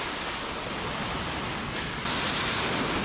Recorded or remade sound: recorded